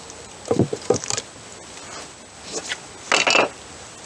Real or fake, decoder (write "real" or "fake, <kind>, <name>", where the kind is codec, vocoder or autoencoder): real